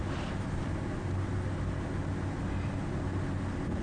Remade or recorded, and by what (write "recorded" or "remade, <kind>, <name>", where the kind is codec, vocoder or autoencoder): recorded